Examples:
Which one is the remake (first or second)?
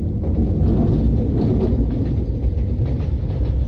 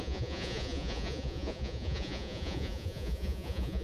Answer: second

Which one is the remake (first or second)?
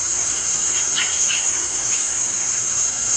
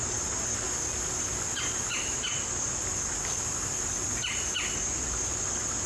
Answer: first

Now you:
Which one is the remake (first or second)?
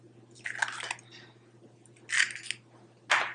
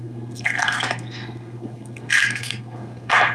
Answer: second